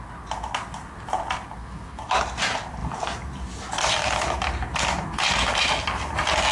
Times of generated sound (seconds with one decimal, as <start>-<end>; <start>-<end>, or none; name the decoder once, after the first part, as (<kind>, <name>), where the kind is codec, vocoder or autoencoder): 1.6-2.2 (autoencoder, DAC-VAE)